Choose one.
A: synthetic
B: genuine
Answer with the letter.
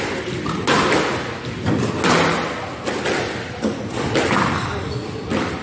B